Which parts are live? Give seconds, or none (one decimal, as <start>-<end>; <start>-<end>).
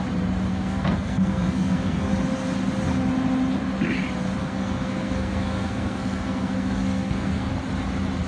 0.0-0.5; 2.1-4.4; 7.5-8.3